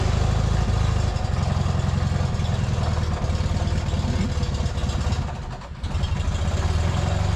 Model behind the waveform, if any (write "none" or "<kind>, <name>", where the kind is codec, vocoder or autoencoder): none